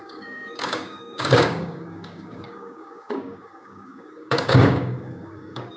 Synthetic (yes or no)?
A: yes